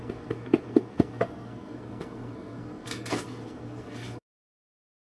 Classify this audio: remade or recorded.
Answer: remade